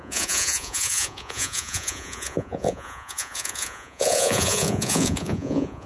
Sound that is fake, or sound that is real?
fake